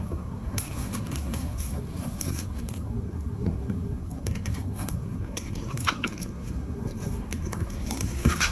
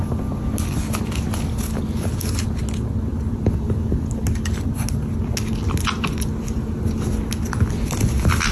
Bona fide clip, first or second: second